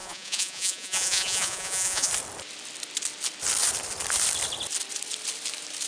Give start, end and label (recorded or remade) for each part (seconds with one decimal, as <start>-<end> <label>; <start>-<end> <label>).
0.0-2.1 remade; 2.1-5.9 recorded